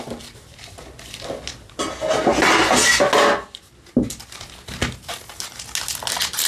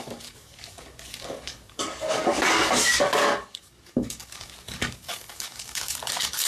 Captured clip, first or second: first